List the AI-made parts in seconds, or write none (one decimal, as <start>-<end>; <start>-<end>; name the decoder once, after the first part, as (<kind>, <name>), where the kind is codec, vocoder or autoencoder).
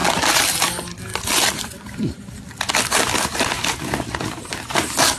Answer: 1.1-4.2 (vocoder, BigVGAN v2)